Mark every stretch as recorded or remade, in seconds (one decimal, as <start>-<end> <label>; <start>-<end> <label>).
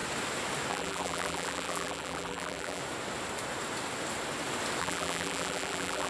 0.0-0.7 recorded; 0.7-2.8 remade; 2.8-4.8 recorded; 4.8-6.1 remade